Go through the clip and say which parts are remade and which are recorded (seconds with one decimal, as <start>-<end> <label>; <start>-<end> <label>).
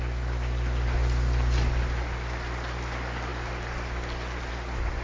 0.0-5.0 recorded